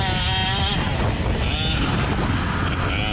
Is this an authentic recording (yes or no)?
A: yes